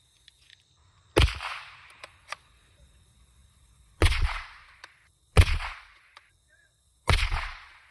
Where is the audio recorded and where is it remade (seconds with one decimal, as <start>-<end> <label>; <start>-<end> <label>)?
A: 0.0-0.5 remade; 0.5-2.0 recorded; 2.0-7.9 remade